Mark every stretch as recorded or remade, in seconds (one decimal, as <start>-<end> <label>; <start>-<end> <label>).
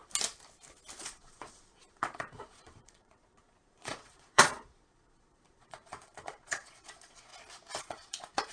0.0-1.0 recorded; 1.0-7.3 remade; 7.3-7.8 recorded; 7.8-8.5 remade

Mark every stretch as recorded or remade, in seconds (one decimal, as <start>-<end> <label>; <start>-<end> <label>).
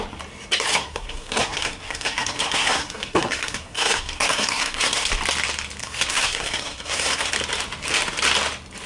0.0-0.7 recorded; 0.7-5.1 remade; 5.1-5.8 recorded; 5.8-7.3 remade; 7.3-8.9 recorded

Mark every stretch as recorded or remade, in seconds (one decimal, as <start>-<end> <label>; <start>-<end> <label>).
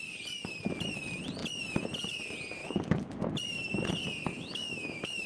0.0-2.6 recorded; 2.6-3.2 remade; 3.2-4.3 recorded; 4.3-5.3 remade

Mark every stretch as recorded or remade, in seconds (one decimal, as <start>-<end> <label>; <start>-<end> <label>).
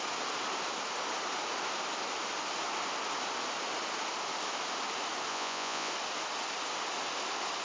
0.0-5.3 recorded; 5.3-5.9 remade; 5.9-7.6 recorded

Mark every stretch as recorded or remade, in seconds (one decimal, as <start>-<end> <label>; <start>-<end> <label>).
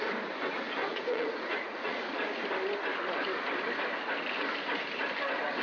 0.0-0.9 recorded; 0.9-2.2 remade; 2.2-5.6 recorded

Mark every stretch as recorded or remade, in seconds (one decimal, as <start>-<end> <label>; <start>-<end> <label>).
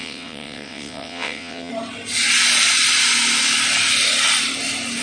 0.0-1.7 remade; 1.7-5.0 recorded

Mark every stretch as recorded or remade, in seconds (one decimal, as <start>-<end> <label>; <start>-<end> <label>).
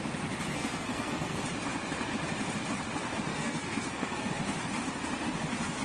0.0-0.5 recorded; 0.5-1.4 remade; 1.4-3.3 recorded; 3.3-4.3 remade; 4.3-5.8 recorded